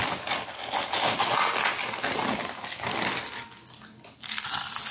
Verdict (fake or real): real